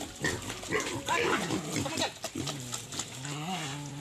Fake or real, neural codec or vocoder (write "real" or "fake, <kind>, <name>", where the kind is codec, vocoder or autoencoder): real